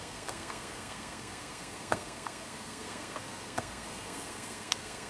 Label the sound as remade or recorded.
remade